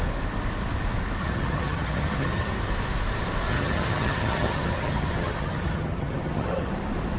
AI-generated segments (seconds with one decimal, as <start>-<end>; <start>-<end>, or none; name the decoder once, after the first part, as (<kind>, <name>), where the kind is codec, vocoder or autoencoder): 1.2-2.5 (vocoder, HiFi-GAN); 3.5-6.7